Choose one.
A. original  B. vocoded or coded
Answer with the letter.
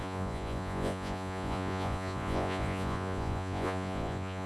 B